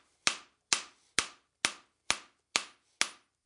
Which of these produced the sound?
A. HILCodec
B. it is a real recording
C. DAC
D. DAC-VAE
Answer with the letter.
B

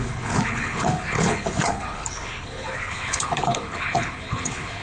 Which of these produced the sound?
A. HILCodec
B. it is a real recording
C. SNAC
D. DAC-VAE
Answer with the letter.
A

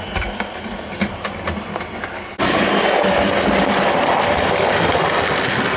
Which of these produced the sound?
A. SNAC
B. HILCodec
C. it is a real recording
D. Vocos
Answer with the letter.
C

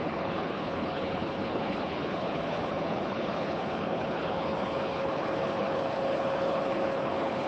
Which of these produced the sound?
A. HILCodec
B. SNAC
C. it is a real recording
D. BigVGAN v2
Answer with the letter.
A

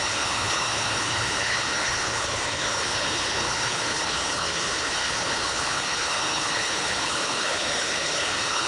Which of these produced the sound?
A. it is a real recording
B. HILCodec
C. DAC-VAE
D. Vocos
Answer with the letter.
B